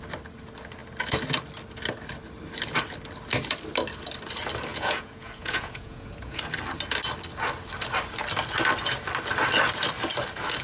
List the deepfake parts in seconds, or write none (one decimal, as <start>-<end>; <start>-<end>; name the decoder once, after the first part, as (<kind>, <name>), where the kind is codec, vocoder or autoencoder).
4.7-6.4 (vocoder, Vocos)